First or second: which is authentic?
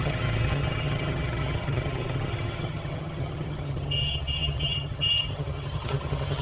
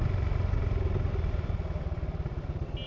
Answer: second